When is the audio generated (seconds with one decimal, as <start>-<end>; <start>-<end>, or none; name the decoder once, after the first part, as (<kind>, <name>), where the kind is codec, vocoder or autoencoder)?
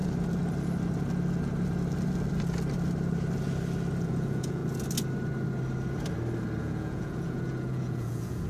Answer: 4.0-4.6 (vocoder, Vocos); 6.6-8.5